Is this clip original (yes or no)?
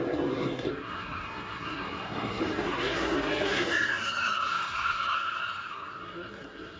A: no